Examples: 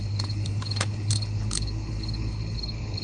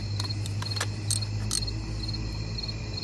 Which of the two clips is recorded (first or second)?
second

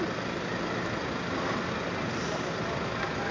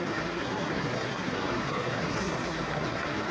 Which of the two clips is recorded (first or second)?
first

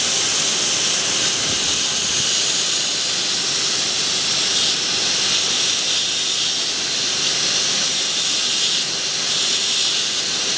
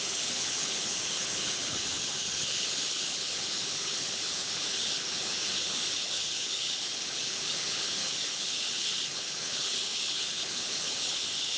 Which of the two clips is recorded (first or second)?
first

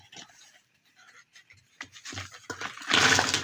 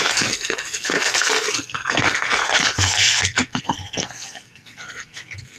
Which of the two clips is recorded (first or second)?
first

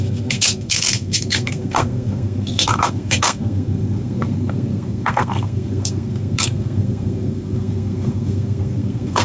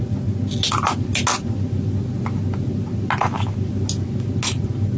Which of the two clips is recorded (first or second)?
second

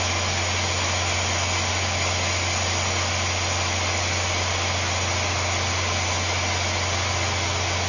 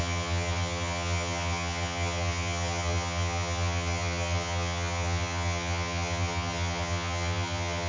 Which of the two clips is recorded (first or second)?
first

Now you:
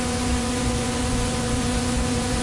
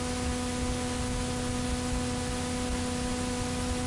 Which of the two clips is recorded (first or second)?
second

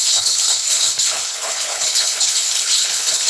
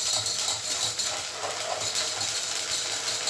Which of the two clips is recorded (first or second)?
second